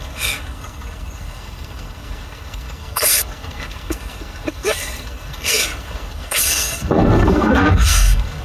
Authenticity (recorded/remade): remade